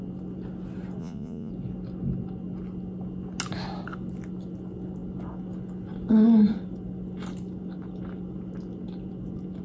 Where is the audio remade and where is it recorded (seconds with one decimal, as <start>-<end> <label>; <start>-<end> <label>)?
0.0-1.0 recorded; 1.0-1.5 remade; 1.5-9.6 recorded